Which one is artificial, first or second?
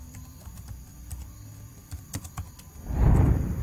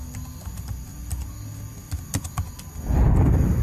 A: first